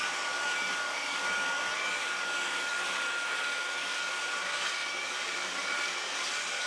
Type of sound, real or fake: fake